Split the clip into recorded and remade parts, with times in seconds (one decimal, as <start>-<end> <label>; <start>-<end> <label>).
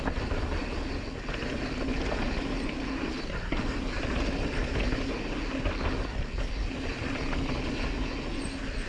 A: 0.0-8.9 recorded